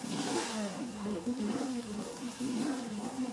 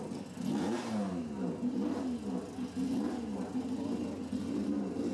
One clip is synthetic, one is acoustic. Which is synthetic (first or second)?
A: first